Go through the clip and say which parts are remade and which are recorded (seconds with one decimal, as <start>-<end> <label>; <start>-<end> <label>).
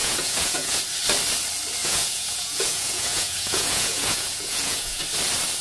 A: 0.0-0.8 remade; 0.8-1.8 recorded; 1.8-5.0 remade; 5.0-5.6 recorded